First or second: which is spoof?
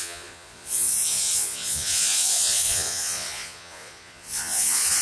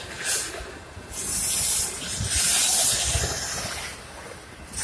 first